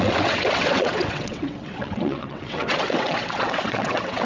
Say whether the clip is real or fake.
fake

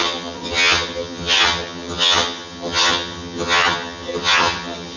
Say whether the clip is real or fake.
fake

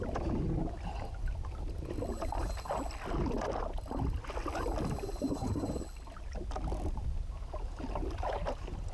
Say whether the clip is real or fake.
real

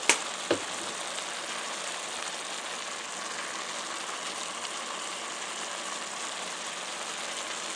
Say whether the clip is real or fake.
real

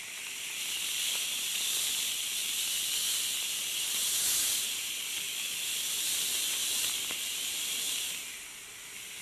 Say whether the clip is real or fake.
real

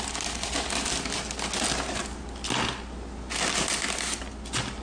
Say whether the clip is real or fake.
real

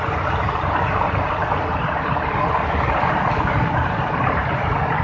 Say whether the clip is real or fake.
real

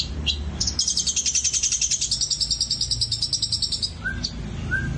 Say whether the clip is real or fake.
real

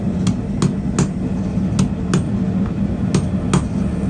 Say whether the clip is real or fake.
real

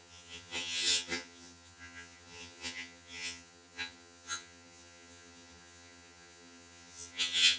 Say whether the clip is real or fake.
fake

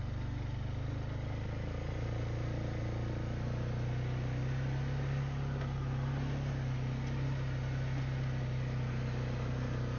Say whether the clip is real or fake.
real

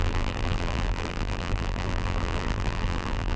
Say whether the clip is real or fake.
fake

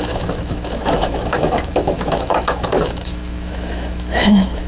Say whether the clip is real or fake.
fake